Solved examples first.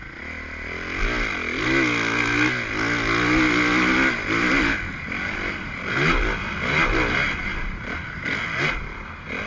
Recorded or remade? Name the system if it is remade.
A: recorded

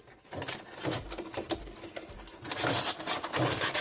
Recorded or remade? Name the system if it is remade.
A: recorded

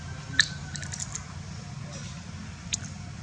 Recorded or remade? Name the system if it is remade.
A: recorded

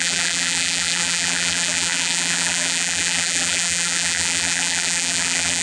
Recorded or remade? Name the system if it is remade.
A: remade, vocoder, BigVGAN v2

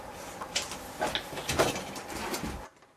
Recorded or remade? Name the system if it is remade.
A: recorded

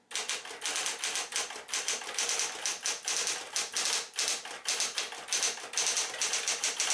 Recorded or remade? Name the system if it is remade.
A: recorded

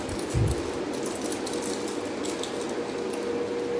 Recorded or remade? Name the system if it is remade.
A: recorded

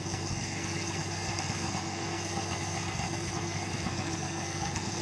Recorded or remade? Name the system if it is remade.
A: remade, codec, SNAC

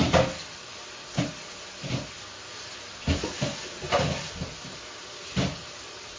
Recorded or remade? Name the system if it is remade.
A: recorded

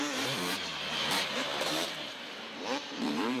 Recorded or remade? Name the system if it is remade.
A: remade, vocoder, BigVGAN v2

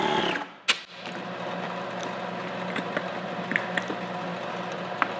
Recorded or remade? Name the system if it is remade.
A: recorded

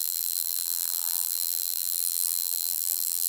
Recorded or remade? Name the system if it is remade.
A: remade, vocoder, BigVGAN v2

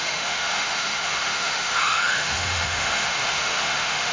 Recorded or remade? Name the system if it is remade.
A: remade, autoencoder, DAC-VAE